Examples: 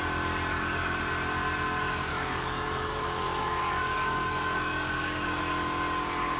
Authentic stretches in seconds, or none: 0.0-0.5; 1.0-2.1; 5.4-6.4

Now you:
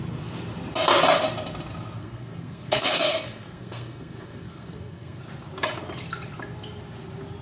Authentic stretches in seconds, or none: 0.0-2.0; 5.2-7.4

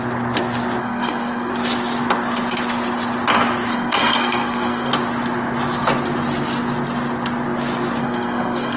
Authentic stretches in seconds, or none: 0.0-0.8; 1.5-3.7; 4.9-8.0